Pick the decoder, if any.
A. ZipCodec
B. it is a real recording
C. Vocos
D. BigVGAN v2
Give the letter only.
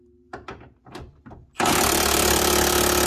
B